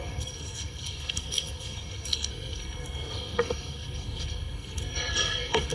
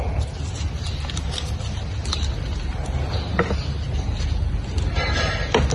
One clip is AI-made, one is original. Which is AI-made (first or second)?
first